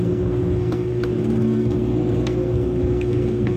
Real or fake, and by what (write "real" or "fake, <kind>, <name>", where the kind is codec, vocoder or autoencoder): fake, codec, SNAC